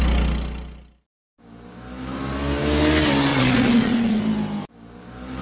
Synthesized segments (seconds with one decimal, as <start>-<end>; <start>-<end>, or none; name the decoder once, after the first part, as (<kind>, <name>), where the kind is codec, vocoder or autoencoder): 3.3-4.2 (vocoder, Vocos)